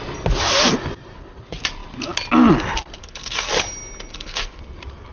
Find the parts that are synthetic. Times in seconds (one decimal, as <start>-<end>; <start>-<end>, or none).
3.0-3.5; 4.1-4.6